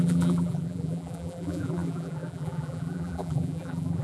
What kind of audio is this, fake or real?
fake